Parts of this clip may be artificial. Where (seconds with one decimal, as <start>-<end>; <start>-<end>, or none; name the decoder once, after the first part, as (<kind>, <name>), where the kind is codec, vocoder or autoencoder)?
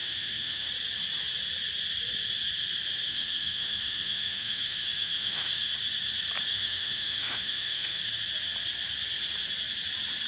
0.0-0.7 (autoencoder, DAC-VAE); 3.1-5.7; 6.5-8.0